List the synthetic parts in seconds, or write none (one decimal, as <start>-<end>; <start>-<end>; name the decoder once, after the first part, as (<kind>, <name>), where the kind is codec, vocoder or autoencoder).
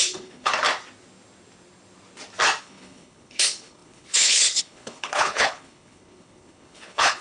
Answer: 0.0-0.5 (codec, HILCodec); 2.6-7.2